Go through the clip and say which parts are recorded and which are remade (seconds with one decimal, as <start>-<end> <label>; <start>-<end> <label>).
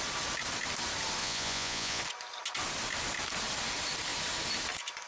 0.0-1.2 recorded; 1.2-2.0 remade; 2.0-5.1 recorded